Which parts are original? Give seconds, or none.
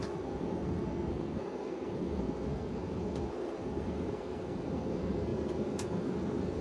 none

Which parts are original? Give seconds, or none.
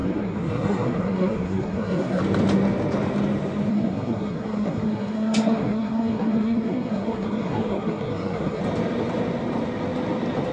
2.2-3.7; 8.6-10.5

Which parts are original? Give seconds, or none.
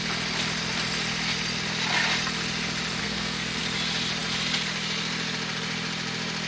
0.0-3.0; 3.6-6.5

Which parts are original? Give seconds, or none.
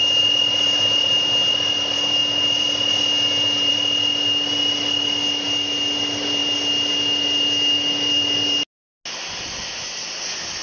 0.0-10.6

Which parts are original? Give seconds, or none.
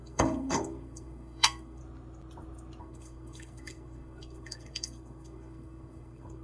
1.8-2.8